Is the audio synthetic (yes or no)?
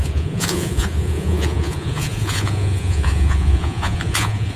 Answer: yes